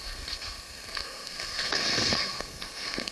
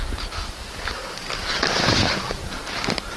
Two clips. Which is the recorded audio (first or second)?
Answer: second